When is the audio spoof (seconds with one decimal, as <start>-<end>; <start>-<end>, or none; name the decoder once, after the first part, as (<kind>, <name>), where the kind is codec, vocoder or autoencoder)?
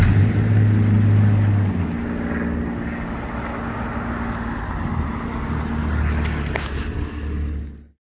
none